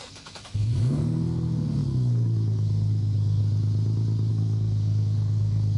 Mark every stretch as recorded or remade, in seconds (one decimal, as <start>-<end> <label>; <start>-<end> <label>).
0.0-3.4 remade; 3.4-4.3 recorded; 4.3-5.8 remade